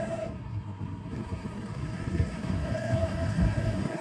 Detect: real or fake fake